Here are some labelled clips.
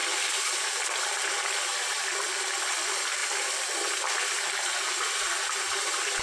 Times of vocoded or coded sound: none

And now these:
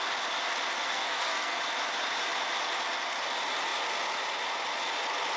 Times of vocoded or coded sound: 0.8-1.6 (codec, SNAC)

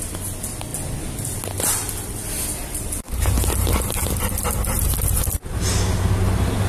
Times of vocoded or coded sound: none

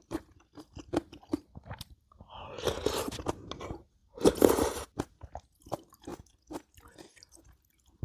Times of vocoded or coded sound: none